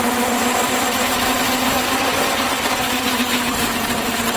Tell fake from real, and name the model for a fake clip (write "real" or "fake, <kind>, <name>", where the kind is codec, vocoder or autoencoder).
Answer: real